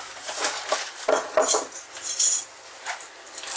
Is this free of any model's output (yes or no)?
yes